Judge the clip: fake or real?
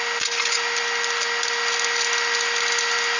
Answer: real